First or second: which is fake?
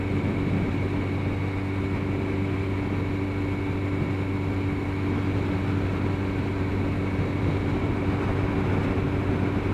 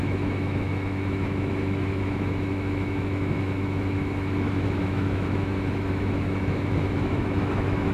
second